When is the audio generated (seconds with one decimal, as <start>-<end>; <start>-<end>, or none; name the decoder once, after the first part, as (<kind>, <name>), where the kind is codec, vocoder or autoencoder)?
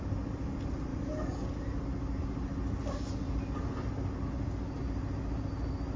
none